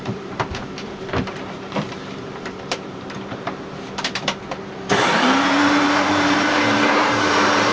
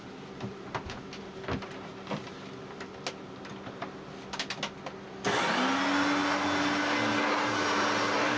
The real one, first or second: second